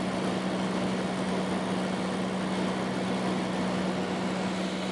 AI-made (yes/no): no